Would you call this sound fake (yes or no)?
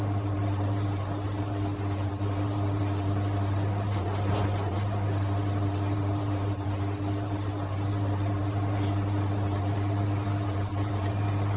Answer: no